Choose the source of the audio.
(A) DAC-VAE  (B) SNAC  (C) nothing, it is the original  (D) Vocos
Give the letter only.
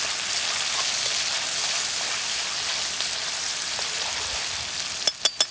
C